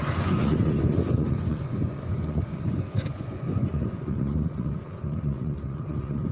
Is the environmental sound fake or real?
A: fake